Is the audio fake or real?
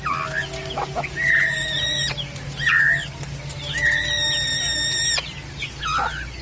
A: real